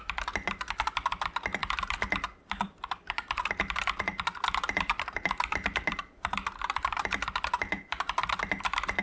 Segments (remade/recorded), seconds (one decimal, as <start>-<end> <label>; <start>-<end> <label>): 0.0-1.6 recorded; 1.6-3.4 remade; 3.4-4.9 recorded; 4.9-8.3 remade; 8.3-9.0 recorded